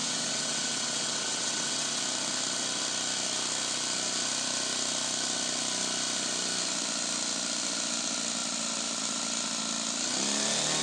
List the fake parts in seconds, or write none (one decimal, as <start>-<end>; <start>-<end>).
0.0-2.0